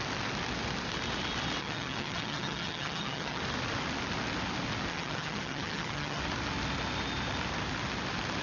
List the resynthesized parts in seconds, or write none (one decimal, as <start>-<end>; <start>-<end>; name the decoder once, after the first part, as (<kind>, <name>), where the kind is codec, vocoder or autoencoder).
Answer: 1.6-3.4 (vocoder, HiFi-GAN); 4.9-6.2